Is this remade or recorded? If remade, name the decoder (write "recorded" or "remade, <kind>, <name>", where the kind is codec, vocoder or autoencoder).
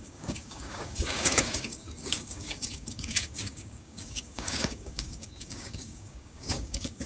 remade, codec, DAC